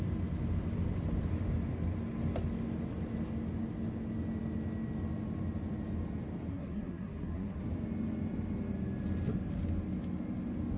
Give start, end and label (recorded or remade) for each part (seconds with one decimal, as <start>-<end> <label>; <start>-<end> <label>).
0.0-6.5 recorded; 6.5-7.6 remade; 7.6-10.8 recorded